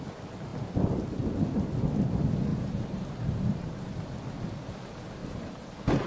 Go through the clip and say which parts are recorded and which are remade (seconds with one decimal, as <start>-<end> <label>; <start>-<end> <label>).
0.0-2.5 recorded; 2.5-3.9 remade; 3.9-5.2 recorded; 5.2-6.1 remade